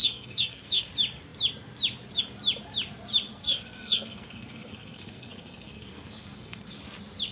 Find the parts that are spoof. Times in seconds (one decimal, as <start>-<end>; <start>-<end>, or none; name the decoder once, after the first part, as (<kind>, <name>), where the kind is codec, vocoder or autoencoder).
0.0-0.9 (codec, SNAC); 3.3-6.6